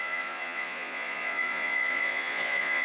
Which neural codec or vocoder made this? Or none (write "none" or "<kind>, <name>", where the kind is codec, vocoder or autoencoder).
vocoder, Vocos